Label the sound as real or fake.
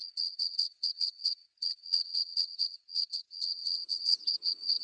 fake